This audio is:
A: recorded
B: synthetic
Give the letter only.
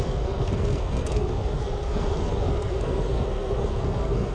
B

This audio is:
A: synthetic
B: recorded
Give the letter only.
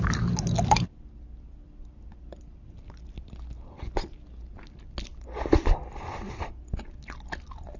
B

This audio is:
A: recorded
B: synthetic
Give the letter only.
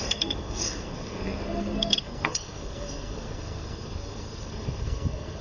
B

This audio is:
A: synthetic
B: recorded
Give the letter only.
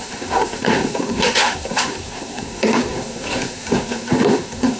A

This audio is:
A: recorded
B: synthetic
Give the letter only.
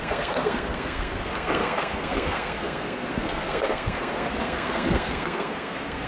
B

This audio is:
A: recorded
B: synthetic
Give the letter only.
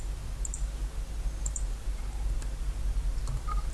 A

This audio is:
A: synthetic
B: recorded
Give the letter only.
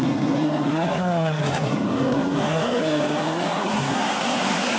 A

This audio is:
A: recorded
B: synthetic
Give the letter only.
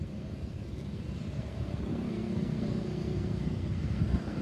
B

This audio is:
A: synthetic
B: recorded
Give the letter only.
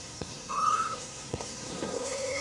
A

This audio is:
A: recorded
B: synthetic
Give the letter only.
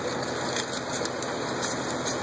A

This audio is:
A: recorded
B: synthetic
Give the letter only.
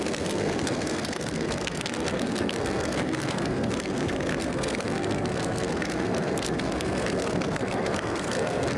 B